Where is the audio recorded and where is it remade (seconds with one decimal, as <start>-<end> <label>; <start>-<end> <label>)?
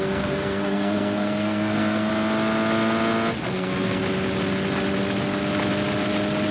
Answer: 0.0-2.1 remade; 2.1-3.5 recorded; 3.5-4.0 remade; 4.0-6.5 recorded